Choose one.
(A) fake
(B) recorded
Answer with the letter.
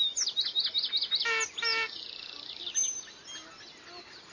B